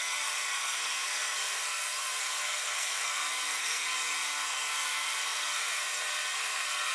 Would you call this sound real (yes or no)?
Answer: no